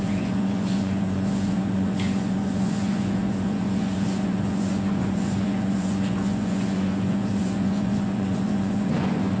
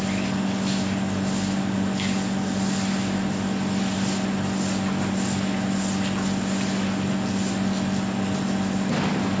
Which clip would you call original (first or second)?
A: second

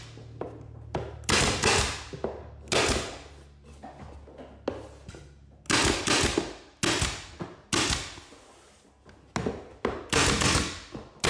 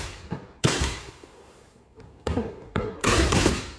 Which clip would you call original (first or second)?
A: first